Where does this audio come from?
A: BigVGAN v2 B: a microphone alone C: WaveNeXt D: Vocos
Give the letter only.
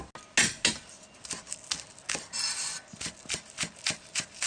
B